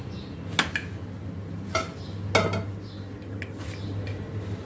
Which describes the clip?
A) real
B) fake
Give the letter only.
A